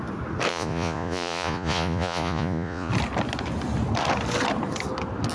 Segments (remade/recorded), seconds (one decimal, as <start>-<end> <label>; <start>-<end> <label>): 0.0-0.5 recorded; 0.5-2.9 remade; 2.9-5.3 recorded

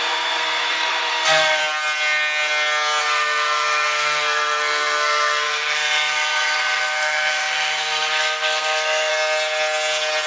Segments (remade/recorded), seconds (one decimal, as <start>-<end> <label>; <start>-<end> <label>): 0.0-1.6 remade; 1.6-3.0 recorded; 3.0-9.1 remade; 9.1-10.3 recorded